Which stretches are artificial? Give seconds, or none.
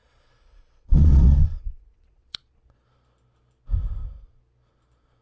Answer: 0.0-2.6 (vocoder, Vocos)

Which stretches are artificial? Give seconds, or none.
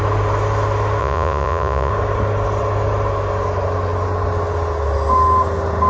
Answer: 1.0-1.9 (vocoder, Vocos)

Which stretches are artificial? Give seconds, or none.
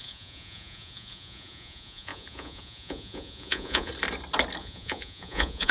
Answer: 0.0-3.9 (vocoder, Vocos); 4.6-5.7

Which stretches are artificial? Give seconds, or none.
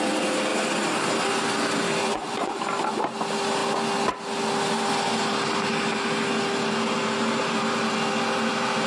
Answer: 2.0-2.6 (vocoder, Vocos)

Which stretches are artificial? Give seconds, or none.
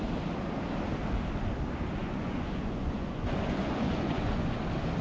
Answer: 2.0-4.6 (vocoder, Vocos)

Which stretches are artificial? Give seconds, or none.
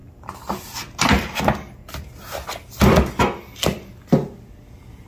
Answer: none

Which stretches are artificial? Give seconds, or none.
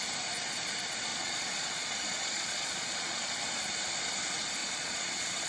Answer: 1.1-3.4 (vocoder, Vocos); 4.6-5.5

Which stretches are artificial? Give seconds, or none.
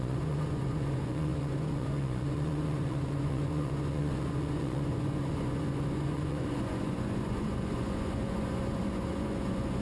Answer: 0.0-9.8 (vocoder, Vocos)